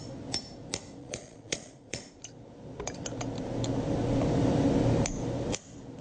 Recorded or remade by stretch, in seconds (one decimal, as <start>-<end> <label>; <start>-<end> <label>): 0.0-1.0 recorded; 1.0-2.0 remade; 2.0-6.0 recorded